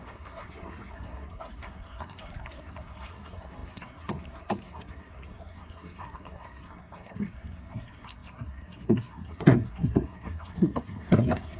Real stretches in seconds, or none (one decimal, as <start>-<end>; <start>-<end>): none